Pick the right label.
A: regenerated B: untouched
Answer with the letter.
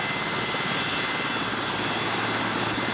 B